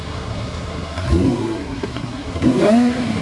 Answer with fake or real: fake